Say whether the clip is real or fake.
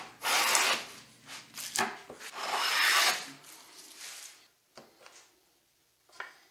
real